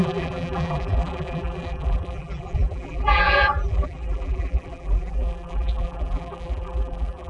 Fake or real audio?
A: fake